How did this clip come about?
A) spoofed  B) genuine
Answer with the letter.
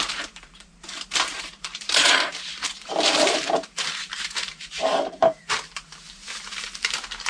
A